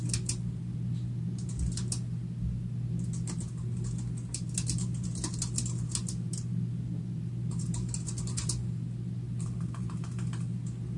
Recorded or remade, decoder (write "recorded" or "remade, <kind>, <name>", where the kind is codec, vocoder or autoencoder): recorded